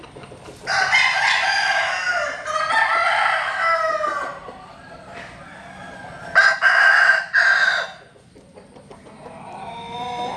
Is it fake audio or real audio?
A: real